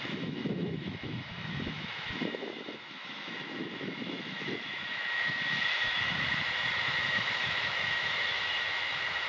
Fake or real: fake